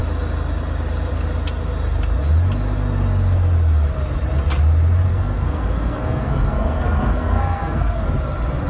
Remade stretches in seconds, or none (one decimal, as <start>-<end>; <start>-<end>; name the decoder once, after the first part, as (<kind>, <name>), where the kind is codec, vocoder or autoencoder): 5.1-8.0 (codec, SNAC)